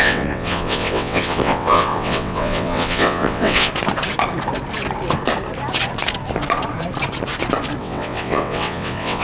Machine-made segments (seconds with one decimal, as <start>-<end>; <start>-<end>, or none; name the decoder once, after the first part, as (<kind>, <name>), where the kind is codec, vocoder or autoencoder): 0.0-3.7 (vocoder, WaveNeXt); 7.8-9.2